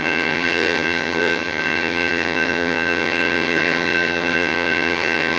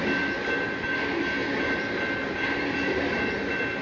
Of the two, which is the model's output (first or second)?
first